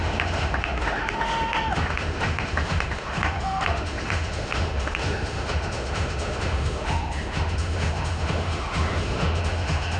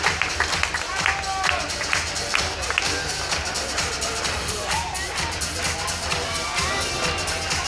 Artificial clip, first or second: first